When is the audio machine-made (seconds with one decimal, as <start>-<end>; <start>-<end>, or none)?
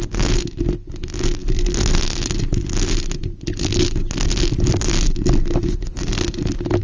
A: none